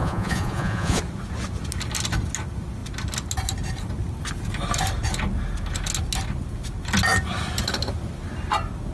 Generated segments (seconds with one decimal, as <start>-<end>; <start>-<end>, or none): 0.0-1.0